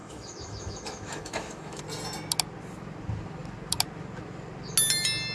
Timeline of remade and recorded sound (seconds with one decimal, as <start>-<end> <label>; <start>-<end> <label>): 0.0-1.8 remade; 1.8-5.3 recorded